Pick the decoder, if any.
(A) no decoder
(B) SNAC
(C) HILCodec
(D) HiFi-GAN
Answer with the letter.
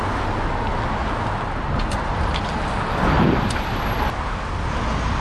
A